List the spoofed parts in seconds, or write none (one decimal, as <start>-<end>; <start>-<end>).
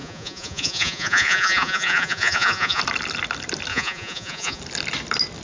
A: 0.0-2.8; 3.7-4.6